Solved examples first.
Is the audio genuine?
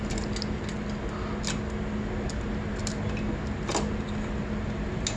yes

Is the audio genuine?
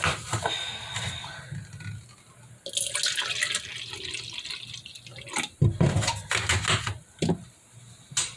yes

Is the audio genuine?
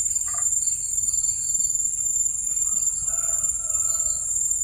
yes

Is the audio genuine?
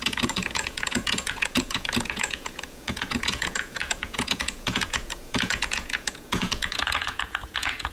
no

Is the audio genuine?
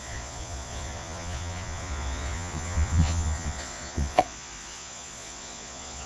no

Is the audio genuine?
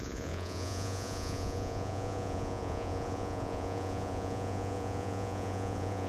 no